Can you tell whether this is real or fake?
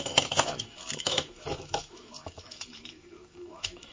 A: fake